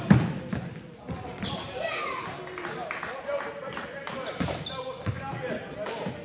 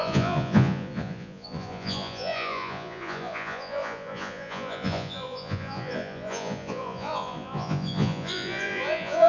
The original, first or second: first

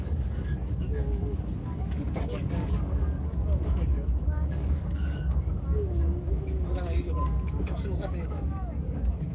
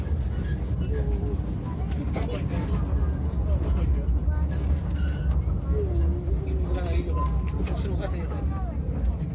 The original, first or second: second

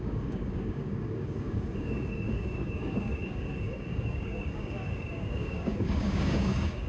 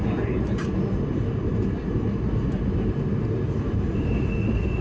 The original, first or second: second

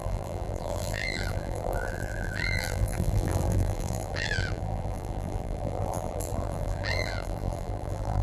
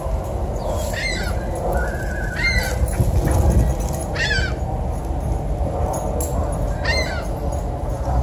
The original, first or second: second